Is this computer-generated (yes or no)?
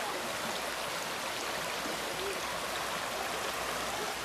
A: no